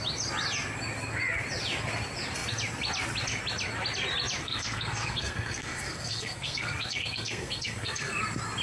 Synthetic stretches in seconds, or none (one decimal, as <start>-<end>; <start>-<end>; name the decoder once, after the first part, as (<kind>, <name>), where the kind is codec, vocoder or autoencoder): 4.4-8.2 (codec, SNAC)